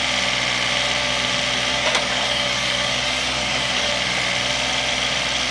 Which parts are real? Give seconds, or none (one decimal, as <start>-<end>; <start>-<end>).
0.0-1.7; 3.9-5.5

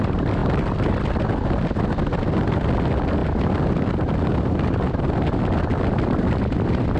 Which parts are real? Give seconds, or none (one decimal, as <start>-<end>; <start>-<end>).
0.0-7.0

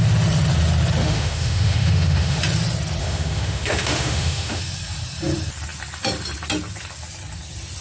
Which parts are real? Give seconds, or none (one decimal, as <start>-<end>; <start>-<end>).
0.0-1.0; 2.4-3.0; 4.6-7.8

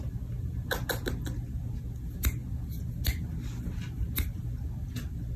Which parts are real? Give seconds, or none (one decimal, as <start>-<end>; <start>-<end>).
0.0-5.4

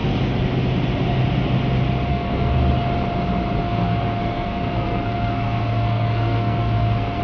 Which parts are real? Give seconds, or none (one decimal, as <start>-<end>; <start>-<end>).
0.0-2.1; 2.6-3.6